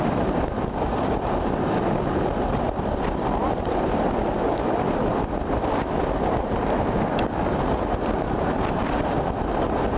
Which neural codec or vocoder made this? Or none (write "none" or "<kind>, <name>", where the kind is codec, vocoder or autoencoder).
none